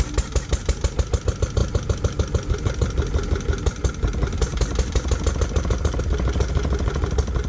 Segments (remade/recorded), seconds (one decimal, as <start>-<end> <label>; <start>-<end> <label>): 0.0-7.5 recorded